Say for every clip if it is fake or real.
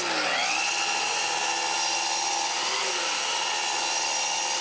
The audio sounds real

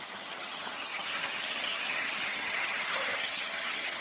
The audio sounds fake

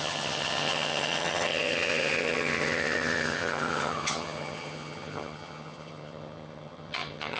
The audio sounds fake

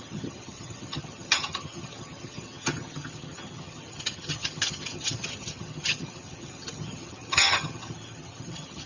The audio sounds fake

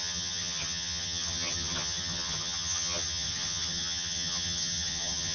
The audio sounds fake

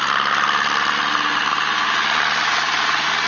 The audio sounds real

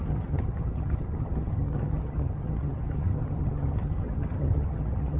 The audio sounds fake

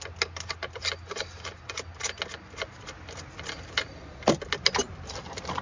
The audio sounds real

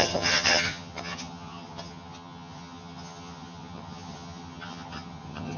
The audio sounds fake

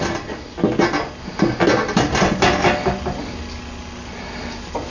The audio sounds real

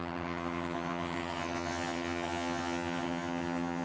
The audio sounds fake